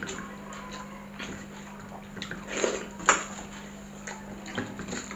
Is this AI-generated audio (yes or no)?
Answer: no